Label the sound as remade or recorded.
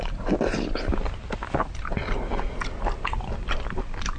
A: recorded